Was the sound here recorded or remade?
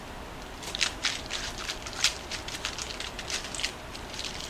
remade